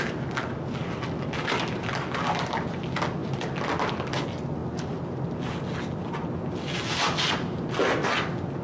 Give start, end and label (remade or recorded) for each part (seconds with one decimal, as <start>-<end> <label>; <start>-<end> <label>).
0.0-8.6 recorded